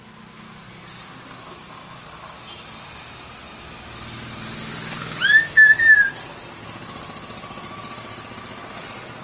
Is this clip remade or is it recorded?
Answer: recorded